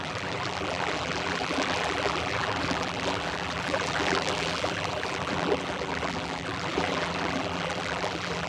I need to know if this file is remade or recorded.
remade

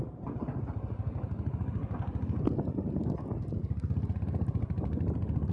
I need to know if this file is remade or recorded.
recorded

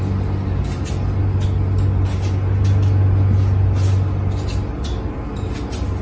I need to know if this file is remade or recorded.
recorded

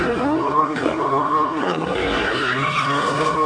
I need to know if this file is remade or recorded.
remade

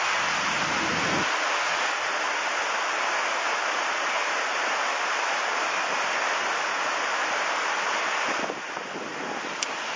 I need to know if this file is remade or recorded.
recorded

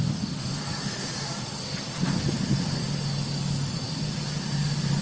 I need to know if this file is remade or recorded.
recorded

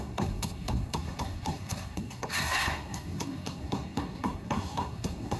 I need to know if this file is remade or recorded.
remade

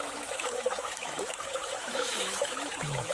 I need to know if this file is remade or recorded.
remade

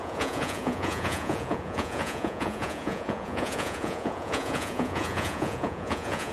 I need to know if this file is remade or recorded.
remade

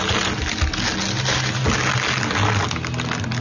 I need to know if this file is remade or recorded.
recorded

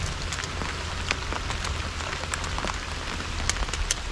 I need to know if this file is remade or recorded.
recorded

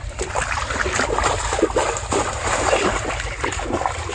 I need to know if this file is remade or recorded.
remade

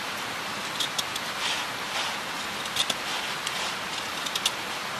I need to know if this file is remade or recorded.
recorded